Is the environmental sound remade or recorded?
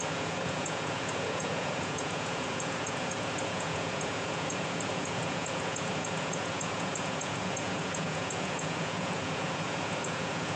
remade